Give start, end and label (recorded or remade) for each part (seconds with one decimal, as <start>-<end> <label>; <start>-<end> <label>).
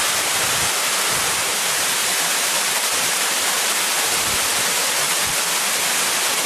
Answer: 0.0-2.0 recorded; 2.0-3.5 remade; 3.5-6.5 recorded